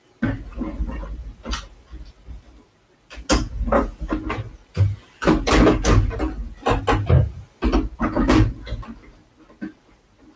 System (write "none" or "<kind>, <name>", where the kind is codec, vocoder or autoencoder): none